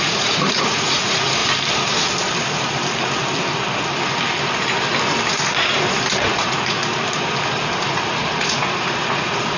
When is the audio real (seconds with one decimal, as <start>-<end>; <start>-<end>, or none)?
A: 1.4-6.2; 6.8-7.9